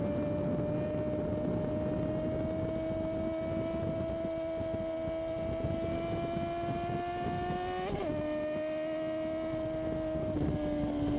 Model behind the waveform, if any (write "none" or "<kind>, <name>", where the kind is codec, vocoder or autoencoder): none